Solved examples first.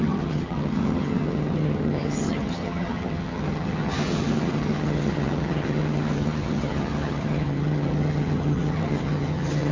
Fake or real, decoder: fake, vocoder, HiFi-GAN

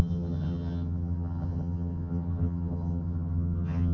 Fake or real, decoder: fake, vocoder, HiFi-GAN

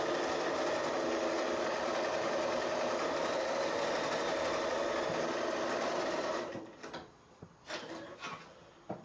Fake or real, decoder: real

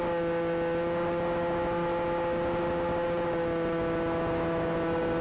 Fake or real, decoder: real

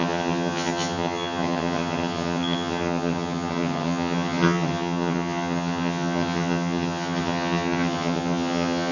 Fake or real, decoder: fake, vocoder, HiFi-GAN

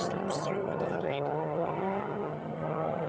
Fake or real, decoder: fake, vocoder, HiFi-GAN